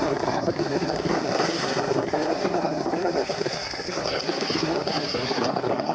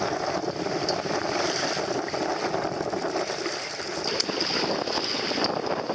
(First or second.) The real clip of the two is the second